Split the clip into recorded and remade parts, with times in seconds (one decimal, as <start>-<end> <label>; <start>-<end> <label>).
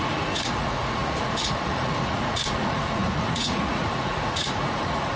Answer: 0.0-5.2 remade